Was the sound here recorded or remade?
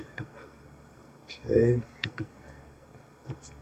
remade